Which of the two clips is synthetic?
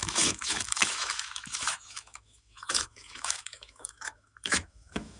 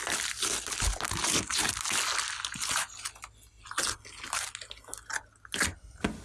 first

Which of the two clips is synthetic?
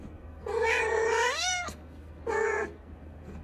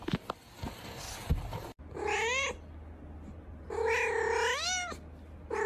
first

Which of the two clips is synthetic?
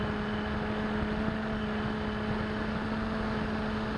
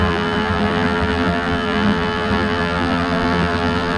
second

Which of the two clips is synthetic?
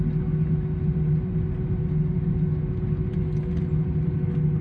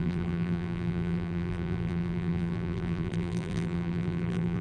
second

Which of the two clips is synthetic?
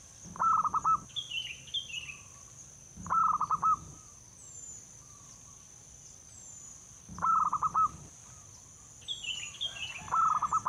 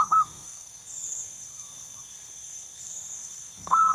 second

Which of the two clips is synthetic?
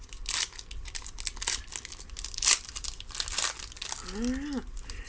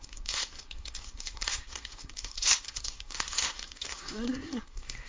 second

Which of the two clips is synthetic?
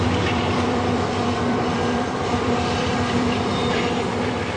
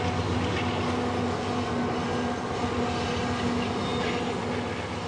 first